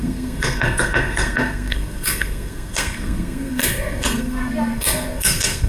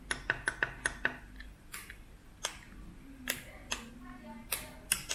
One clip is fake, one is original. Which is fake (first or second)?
first